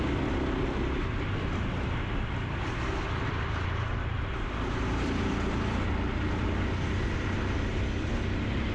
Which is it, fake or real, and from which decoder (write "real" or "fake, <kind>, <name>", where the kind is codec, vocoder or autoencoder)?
real